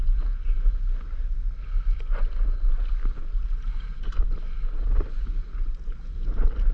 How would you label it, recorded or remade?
recorded